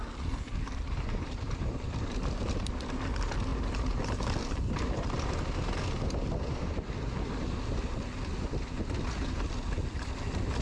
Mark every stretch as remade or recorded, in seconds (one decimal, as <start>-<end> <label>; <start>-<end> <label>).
0.0-10.6 recorded